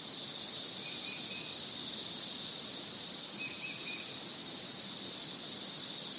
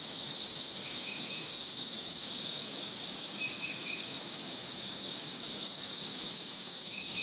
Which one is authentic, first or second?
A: first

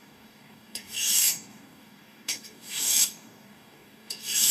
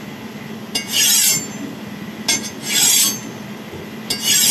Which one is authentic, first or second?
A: second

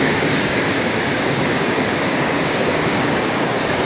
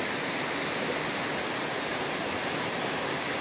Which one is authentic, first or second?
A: second